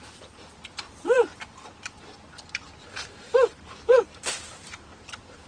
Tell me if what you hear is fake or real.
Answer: fake